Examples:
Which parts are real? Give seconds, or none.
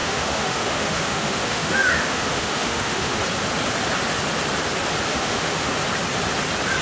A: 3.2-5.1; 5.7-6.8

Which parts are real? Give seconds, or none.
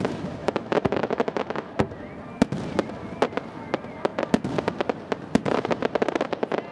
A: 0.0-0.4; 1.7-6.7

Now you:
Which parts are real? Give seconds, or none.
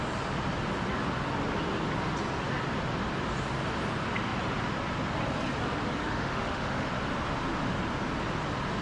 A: 0.0-6.0; 6.9-8.8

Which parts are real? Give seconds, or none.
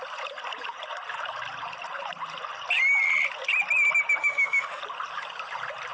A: 0.0-4.2; 4.8-5.9